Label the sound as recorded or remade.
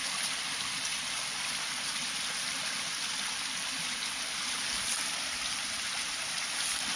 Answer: recorded